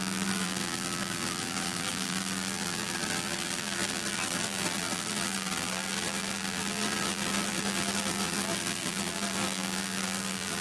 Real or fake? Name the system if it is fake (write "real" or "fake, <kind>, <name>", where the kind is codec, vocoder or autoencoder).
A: fake, vocoder, BigVGAN v2